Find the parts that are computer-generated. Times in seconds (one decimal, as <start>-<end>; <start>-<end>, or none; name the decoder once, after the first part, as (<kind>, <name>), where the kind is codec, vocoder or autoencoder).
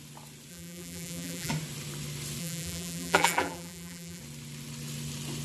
0.5-1.5 (vocoder, BigVGAN v2); 2.4-4.2